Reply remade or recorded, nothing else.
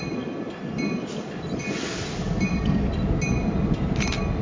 recorded